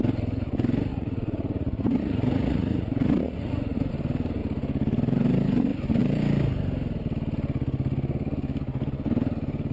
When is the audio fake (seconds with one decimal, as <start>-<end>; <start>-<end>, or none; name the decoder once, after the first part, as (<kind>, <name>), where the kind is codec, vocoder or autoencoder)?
0.9-3.9 (vocoder, Vocos)